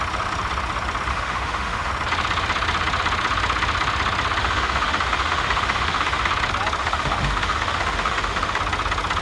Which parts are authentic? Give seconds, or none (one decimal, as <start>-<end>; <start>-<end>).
0.0-1.1; 1.9-4.4; 6.3-6.8; 8.6-9.2